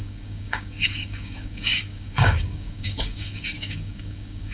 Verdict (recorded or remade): remade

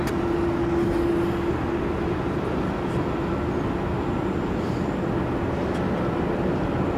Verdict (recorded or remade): recorded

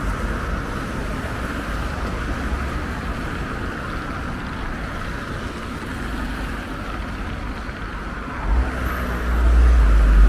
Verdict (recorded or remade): recorded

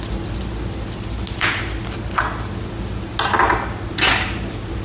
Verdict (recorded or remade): recorded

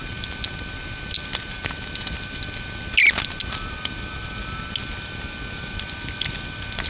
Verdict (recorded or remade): recorded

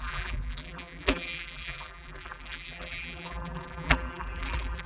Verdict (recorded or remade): remade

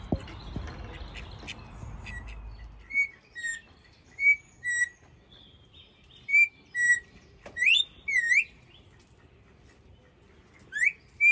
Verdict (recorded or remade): recorded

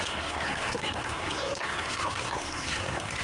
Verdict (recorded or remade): remade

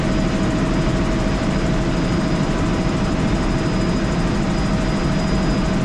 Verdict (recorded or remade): recorded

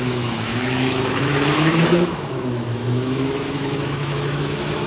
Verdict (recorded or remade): remade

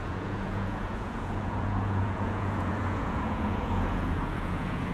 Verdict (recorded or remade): remade